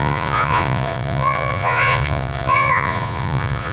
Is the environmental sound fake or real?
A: fake